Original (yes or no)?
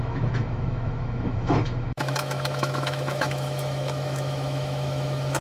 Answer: no